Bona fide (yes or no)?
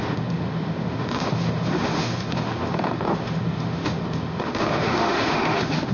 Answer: no